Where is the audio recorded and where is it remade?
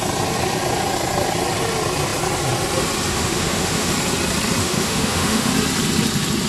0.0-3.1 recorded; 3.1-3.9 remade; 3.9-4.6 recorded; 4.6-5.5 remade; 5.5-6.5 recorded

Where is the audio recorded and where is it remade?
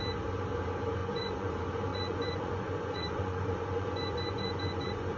0.0-1.0 recorded; 1.0-1.5 remade; 1.5-1.9 recorded; 1.9-5.2 remade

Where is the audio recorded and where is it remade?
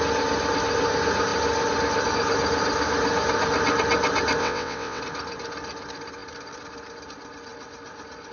0.0-4.4 recorded; 4.4-5.0 remade; 5.0-8.3 recorded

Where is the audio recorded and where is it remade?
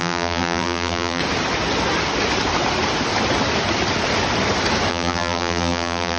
0.0-1.2 remade; 1.2-4.9 recorded; 4.9-6.2 remade